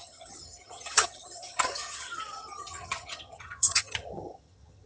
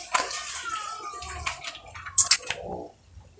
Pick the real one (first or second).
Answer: second